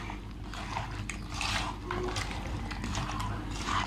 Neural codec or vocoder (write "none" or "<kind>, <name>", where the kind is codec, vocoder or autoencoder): none